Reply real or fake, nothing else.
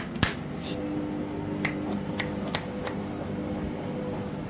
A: real